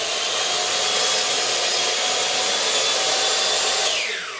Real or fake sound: real